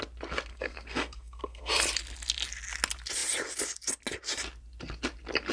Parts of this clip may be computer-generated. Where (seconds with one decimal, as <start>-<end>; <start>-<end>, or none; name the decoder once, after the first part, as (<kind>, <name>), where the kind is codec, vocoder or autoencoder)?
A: 0.5-1.7 (codec, SNAC)